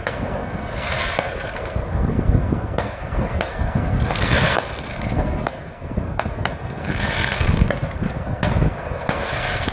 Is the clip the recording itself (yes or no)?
no